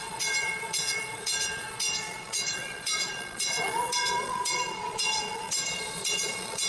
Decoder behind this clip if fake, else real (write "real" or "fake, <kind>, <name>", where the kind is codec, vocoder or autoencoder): fake, vocoder, Vocos